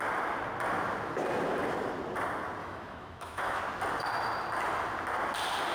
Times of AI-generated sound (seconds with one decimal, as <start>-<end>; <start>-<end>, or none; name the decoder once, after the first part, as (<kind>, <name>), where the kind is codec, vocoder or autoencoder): 2.6-3.6 (autoencoder, DAC-VAE)